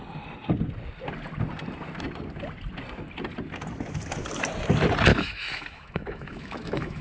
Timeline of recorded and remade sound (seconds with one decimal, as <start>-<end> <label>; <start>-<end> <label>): 0.0-5.1 recorded; 5.1-7.0 remade